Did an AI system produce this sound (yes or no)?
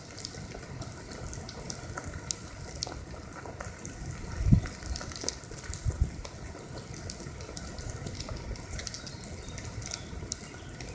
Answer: no